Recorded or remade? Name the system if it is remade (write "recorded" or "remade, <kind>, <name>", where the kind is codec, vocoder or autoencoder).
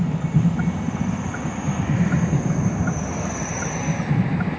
recorded